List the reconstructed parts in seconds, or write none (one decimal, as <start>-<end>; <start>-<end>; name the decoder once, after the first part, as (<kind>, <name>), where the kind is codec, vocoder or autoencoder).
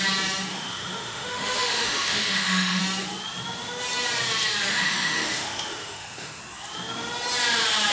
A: 0.5-2.8 (autoencoder, DAC-VAE); 4.7-6.4